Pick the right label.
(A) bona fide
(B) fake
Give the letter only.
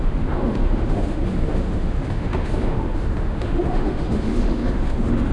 B